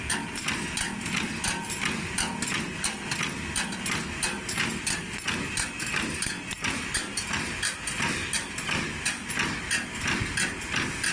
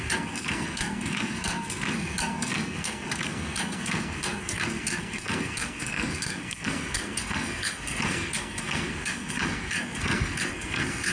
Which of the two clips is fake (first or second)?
second